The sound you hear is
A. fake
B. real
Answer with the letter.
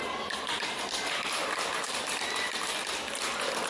B